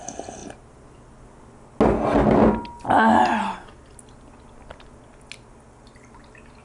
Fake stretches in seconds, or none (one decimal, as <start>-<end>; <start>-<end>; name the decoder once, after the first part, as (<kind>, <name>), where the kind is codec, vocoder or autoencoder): none